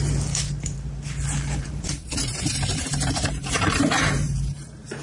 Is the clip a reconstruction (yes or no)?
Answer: yes